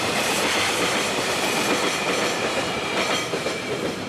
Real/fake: fake